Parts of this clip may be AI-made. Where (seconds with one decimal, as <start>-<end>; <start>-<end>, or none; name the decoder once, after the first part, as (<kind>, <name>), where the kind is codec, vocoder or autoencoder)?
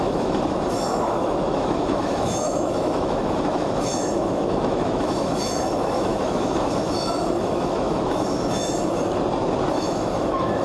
0.0-8.8 (autoencoder, DAC-VAE); 9.7-10.6